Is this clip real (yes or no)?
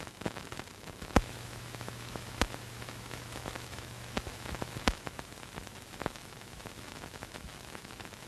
no